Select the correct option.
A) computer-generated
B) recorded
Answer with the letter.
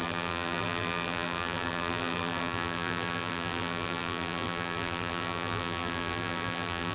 A